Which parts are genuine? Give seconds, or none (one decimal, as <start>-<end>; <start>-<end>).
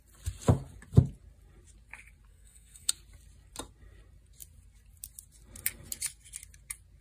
0.0-2.3; 2.9-7.0